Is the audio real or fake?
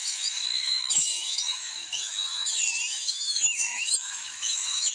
fake